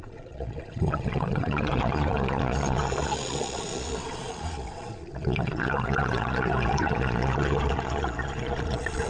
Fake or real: fake